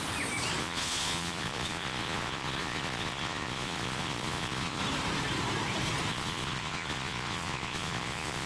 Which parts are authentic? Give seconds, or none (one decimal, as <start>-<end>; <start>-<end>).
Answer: 0.0-0.6; 4.8-6.1